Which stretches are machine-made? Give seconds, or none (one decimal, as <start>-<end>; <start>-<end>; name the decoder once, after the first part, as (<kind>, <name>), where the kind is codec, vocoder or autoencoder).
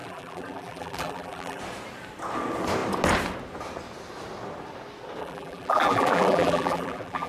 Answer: 0.0-1.6 (vocoder, BigVGAN v2); 5.2-7.3